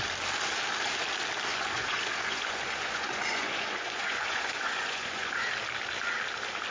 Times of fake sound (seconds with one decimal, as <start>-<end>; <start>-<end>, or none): 1.5-5.5